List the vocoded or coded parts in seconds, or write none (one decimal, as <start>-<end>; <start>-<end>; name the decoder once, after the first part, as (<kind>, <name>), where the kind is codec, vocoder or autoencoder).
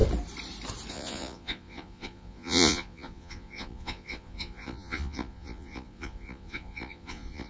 0.9-7.5 (vocoder, Vocos)